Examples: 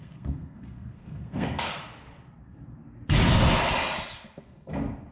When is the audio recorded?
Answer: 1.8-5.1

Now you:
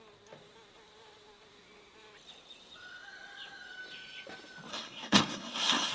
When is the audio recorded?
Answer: 0.0-4.7

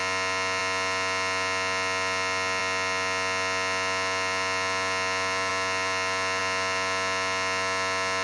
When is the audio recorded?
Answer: 0.0-8.2

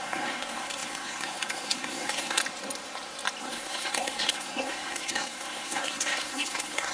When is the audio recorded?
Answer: 2.4-3.4

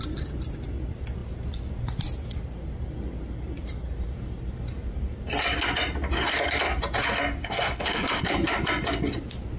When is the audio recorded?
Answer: 0.0-7.4; 8.2-9.6

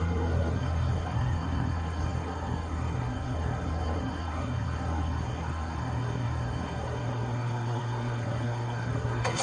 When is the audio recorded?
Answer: none

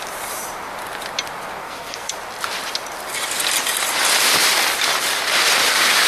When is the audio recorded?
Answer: 0.0-1.6; 2.1-6.1

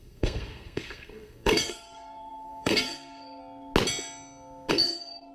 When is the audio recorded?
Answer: 3.4-4.7